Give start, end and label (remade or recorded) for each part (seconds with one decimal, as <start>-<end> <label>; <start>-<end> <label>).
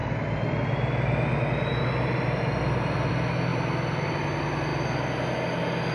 0.0-5.9 recorded